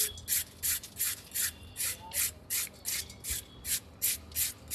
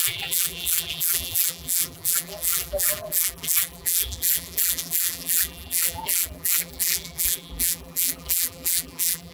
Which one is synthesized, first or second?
second